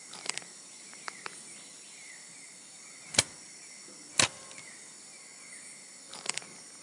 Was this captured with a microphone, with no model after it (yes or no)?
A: no